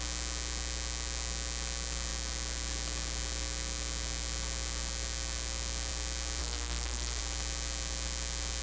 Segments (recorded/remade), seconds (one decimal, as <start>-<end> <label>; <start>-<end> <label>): 0.0-6.4 recorded; 6.4-7.2 remade; 7.2-8.6 recorded